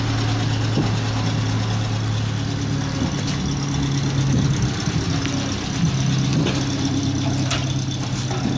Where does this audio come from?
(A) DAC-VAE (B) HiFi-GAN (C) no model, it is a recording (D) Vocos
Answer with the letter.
C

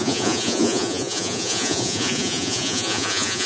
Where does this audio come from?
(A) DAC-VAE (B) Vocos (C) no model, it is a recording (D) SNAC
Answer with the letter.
B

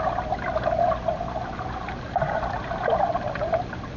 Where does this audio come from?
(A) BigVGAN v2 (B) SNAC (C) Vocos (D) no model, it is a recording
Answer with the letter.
D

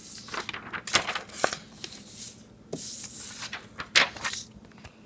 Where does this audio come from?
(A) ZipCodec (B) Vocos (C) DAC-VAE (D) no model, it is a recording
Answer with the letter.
D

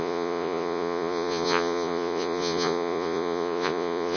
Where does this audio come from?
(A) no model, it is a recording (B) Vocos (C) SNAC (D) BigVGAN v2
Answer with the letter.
B